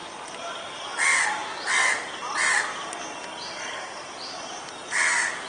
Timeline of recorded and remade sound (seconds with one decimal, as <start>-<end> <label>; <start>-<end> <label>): 0.0-5.5 recorded